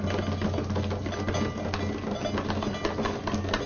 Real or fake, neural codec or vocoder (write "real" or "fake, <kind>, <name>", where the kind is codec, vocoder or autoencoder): real